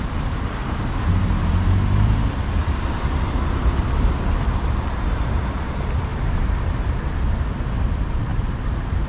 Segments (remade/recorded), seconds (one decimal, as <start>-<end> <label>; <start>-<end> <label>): 0.0-0.6 remade; 0.6-1.2 recorded; 1.2-9.1 remade